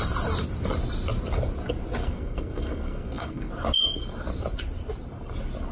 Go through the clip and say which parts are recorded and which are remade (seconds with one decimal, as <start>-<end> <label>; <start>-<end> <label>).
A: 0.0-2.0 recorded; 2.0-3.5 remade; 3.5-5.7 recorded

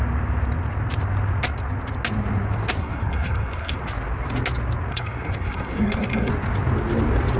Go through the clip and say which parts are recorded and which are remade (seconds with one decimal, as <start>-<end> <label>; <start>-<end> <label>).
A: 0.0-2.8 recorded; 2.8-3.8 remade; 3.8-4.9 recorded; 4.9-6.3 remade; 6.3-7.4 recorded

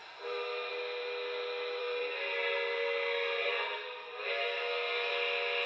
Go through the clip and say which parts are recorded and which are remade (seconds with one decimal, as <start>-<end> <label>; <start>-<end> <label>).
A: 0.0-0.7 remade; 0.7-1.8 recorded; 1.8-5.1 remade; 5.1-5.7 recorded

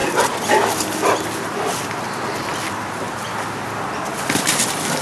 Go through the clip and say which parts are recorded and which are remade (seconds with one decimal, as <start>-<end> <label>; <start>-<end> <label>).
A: 0.0-5.0 recorded

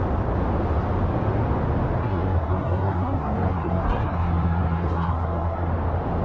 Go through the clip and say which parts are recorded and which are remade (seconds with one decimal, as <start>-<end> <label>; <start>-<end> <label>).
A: 0.0-2.0 recorded; 2.0-5.7 remade; 5.7-6.2 recorded

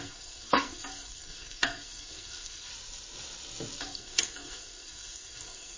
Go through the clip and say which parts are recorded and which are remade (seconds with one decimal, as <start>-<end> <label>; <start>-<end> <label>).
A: 0.0-2.7 remade; 2.7-3.8 recorded; 3.8-5.8 remade